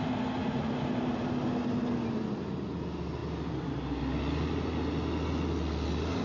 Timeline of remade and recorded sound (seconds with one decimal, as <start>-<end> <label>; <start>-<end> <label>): 0.0-6.2 recorded